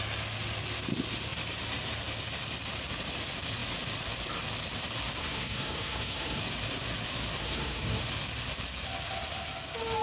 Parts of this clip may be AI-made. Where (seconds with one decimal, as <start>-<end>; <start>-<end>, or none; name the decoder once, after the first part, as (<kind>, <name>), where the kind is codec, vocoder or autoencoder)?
5.2-6.4 (codec, SNAC); 7.4-8.0